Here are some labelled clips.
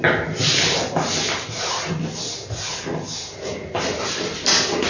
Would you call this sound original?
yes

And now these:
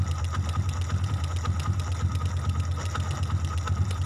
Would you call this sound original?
yes